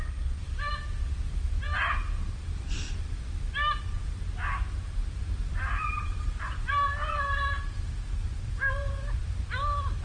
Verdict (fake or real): real